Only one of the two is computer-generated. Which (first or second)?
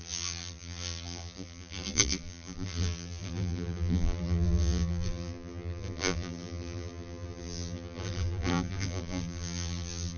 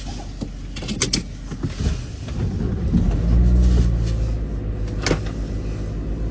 first